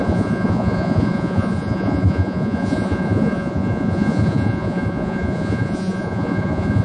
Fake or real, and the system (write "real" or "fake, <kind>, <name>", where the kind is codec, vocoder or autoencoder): fake, vocoder, Vocos